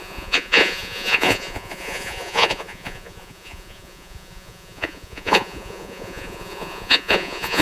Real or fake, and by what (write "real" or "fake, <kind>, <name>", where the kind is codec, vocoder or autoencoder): fake, vocoder, Vocos